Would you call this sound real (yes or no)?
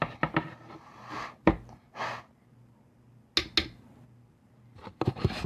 yes